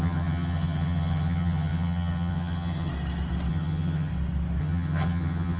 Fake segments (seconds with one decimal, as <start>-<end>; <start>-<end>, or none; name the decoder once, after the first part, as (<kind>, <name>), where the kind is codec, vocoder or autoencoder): 0.0-2.9 (vocoder, HiFi-GAN); 3.5-4.1; 4.6-5.6